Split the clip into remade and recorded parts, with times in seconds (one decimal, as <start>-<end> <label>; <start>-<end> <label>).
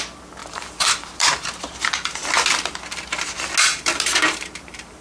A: 0.0-0.4 recorded; 0.4-2.2 remade; 2.2-3.7 recorded; 3.7-5.0 remade